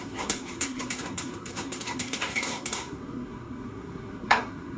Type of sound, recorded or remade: remade